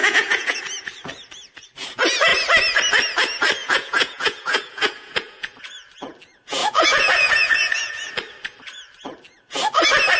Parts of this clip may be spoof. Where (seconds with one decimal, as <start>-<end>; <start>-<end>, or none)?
0.0-0.6; 3.6-5.5; 6.6-8.1